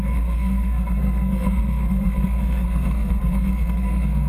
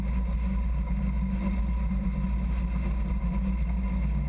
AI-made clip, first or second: first